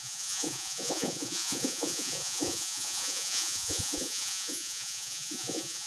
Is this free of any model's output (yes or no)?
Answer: no